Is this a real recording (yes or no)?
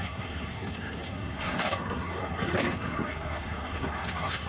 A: no